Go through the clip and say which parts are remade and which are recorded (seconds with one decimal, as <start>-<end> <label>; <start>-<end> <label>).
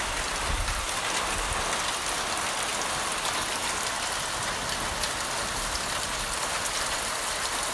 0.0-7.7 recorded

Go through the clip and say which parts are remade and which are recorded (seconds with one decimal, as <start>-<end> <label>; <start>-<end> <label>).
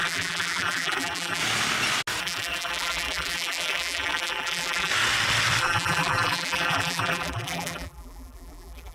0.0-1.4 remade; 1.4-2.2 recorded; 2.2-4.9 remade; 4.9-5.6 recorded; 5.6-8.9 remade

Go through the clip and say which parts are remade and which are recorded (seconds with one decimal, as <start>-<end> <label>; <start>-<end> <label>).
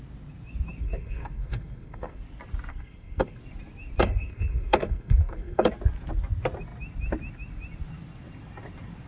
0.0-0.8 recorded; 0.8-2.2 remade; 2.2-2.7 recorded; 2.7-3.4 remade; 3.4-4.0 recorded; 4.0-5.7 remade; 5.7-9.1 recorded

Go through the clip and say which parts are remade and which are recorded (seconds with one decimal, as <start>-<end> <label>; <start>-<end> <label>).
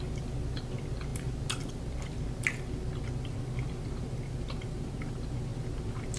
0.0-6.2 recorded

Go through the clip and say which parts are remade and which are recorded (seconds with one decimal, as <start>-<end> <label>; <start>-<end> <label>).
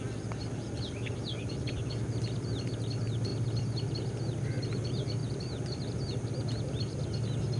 0.0-7.6 recorded